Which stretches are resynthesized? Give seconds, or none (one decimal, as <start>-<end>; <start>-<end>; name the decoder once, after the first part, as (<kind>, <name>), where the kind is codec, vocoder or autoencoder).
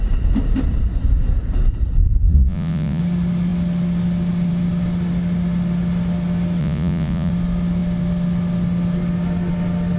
2.3-3.0 (vocoder, Vocos); 6.6-7.3